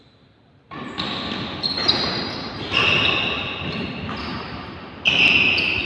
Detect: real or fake real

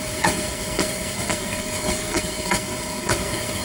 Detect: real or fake fake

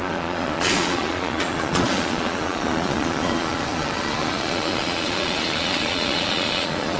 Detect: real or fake fake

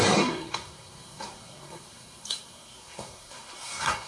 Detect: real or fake fake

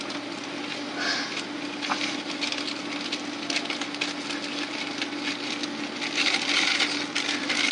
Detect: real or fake real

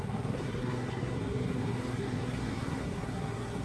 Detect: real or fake fake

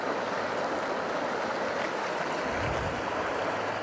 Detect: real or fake real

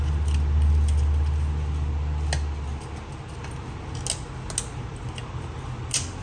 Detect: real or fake real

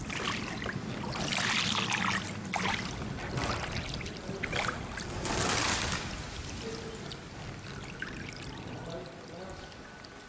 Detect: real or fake real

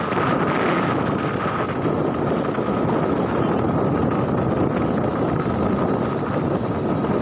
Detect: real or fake real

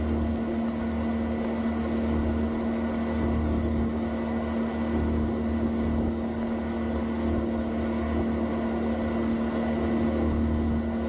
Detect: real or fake real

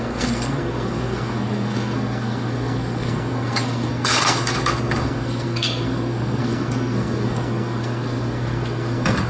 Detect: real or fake fake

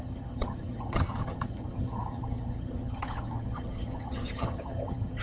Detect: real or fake fake